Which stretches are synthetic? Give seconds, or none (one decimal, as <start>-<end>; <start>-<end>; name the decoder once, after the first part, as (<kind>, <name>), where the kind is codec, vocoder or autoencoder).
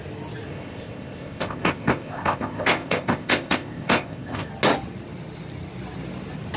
0.5-4.5 (codec, ZipCodec)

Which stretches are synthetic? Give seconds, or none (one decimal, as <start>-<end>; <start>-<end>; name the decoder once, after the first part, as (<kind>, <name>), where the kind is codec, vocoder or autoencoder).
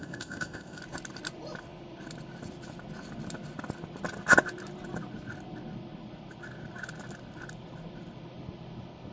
0.0-0.8 (codec, ZipCodec)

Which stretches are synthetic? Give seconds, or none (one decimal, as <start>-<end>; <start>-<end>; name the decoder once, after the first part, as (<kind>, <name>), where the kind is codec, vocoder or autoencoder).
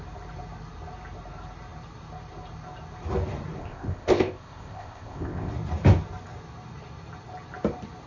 3.6-5.5 (codec, ZipCodec)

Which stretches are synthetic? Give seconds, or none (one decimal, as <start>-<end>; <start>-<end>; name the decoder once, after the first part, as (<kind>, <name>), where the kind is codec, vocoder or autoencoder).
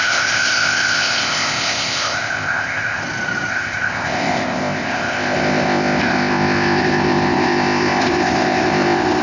0.0-3.0 (codec, ZipCodec); 3.5-9.2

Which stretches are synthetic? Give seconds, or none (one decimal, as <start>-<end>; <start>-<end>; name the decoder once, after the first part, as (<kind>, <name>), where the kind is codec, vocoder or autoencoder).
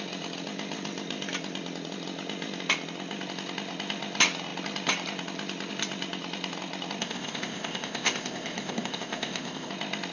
7.0-9.7 (codec, ZipCodec)